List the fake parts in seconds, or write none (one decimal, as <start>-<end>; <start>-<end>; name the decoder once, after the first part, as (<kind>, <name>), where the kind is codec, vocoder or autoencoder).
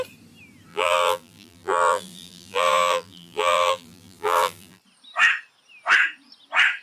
0.7-4.8 (vocoder, BigVGAN v2)